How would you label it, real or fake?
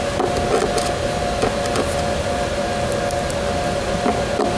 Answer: real